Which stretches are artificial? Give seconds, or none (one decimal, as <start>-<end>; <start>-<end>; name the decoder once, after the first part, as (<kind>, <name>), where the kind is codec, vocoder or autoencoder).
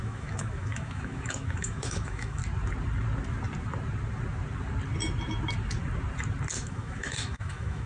0.0-2.4 (autoencoder, DAC-VAE); 6.5-7.9